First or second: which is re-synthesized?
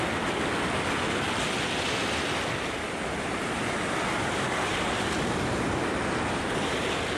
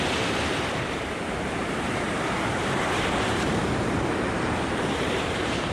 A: second